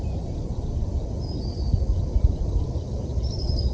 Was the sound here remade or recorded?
recorded